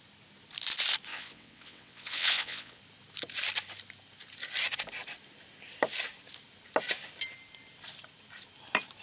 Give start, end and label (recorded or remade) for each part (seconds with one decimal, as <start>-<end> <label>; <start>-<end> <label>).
0.0-1.1 recorded; 1.1-2.8 remade; 2.8-9.0 recorded